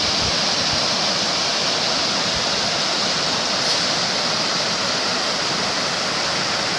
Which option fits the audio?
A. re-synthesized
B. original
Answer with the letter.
B